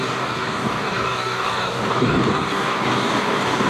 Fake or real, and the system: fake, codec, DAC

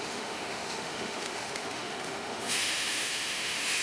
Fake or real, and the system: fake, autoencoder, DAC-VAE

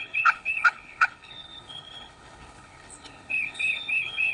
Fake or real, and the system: fake, codec, HILCodec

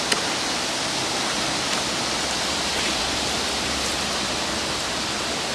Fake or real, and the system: real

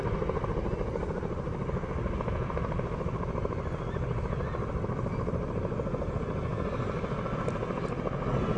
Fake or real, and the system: real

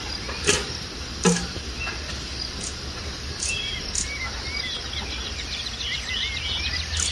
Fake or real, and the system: real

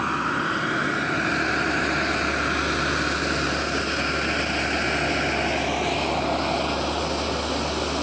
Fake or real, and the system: real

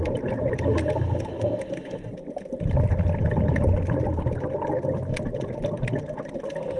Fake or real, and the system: real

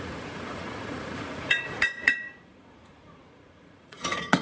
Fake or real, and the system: fake, vocoder, Vocos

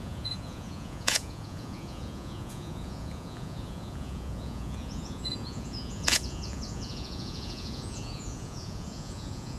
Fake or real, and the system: fake, vocoder, Vocos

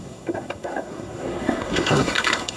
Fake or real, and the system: fake, codec, SNAC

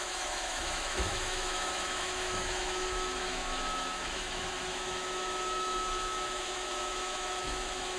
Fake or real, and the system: fake, autoencoder, DAC-VAE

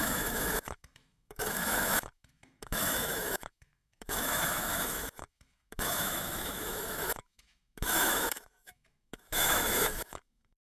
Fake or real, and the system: fake, autoencoder, DAC-VAE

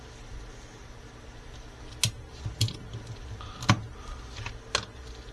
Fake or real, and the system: real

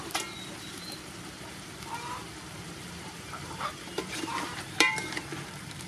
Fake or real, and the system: fake, vocoder, BigVGAN v2